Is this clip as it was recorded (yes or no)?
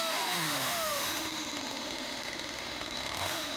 no